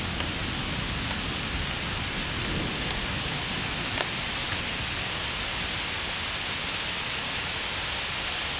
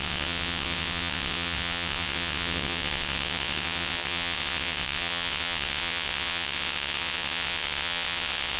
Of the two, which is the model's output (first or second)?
second